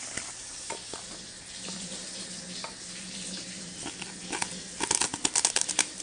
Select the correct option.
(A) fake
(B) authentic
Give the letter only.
B